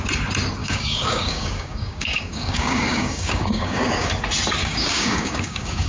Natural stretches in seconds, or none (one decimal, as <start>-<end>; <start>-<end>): 0.0-0.6; 4.1-4.6